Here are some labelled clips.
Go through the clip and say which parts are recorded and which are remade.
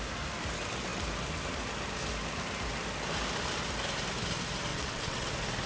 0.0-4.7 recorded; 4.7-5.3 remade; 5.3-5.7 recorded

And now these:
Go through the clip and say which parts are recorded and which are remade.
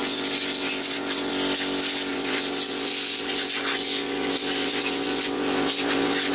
0.0-1.3 remade; 1.3-2.1 recorded; 2.1-6.3 remade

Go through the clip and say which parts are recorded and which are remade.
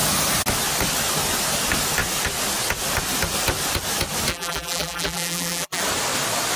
0.0-4.3 recorded; 4.3-5.8 remade; 5.8-6.6 recorded